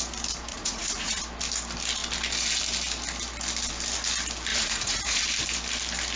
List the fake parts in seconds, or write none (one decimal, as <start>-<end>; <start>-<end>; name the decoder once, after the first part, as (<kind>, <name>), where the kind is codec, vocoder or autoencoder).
0.5-1.2 (vocoder, Vocos); 4.5-5.2